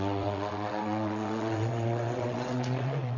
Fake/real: fake